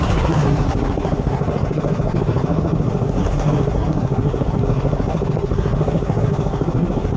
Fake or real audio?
fake